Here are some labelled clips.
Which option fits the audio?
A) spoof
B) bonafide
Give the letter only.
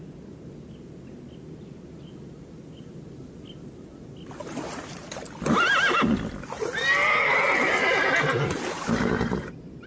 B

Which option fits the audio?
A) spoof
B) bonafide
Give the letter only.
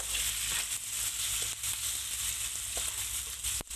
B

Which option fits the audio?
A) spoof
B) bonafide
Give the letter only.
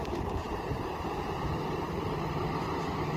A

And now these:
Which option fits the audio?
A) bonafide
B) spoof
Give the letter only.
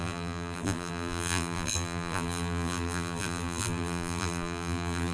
B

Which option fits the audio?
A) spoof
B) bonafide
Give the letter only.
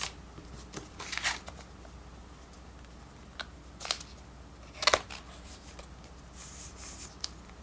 B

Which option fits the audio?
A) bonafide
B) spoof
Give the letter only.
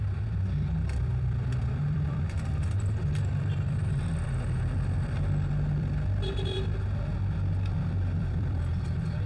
B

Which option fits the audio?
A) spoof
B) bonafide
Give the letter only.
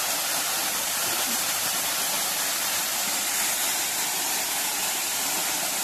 A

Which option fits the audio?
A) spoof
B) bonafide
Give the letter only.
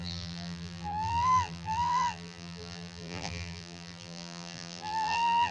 A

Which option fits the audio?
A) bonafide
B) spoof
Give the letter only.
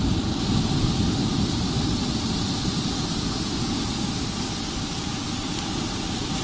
B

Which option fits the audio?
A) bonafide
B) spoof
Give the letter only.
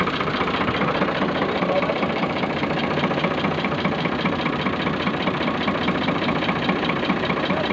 B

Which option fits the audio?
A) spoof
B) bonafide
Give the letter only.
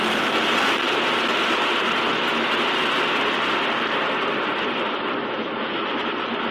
B